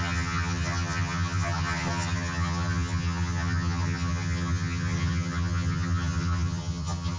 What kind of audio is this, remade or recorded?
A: remade